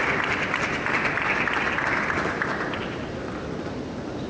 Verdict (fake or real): real